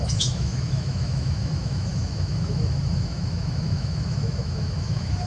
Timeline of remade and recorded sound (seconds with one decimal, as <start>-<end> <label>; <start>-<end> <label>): 0.0-5.3 remade

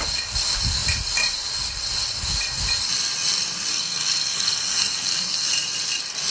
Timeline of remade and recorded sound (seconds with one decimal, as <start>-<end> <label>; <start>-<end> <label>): 0.0-3.7 recorded; 3.7-5.5 remade; 5.5-6.3 recorded

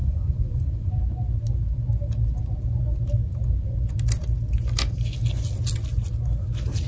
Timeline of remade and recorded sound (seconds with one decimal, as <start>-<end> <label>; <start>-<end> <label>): 0.0-0.9 remade; 0.9-6.9 recorded

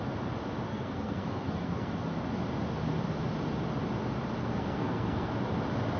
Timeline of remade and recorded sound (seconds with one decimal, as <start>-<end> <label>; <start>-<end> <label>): 0.0-0.7 recorded; 0.7-1.9 remade; 1.9-4.4 recorded; 4.4-5.3 remade; 5.3-6.0 recorded

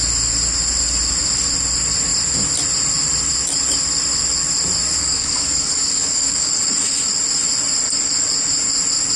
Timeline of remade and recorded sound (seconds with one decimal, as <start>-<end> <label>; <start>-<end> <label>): 0.0-4.9 recorded; 4.9-6.5 remade; 6.5-9.2 recorded